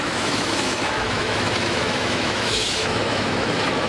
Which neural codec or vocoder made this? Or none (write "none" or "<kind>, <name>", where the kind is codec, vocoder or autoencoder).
autoencoder, DAC-VAE